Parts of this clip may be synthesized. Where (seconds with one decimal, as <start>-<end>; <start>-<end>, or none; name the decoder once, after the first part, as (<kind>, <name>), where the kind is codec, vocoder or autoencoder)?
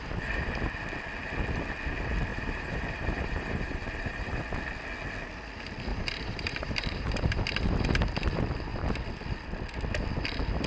2.3-4.4 (vocoder, BigVGAN v2); 5.9-7.9